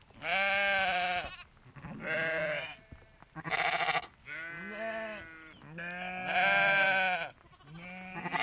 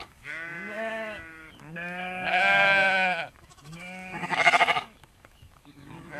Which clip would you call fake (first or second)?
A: second